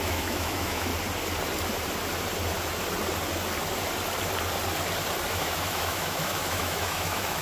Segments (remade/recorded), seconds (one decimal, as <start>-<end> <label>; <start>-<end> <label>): 0.0-0.9 remade; 0.9-5.3 recorded; 5.3-7.4 remade